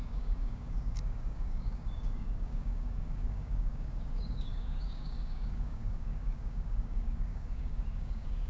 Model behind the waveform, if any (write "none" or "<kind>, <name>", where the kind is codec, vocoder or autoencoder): codec, DAC